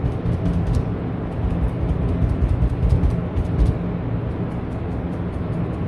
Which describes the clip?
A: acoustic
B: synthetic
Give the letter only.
A